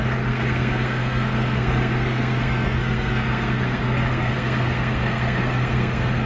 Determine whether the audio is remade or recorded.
remade